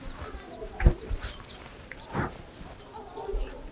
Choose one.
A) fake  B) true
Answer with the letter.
A